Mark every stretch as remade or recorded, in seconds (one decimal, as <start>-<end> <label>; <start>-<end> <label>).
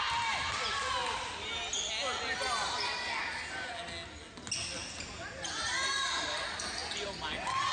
0.0-7.7 recorded